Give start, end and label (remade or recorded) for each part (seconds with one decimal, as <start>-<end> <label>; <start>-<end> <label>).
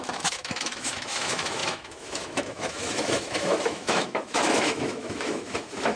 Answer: 0.0-6.0 remade